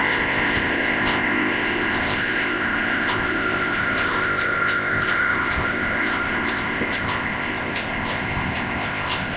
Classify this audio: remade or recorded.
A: remade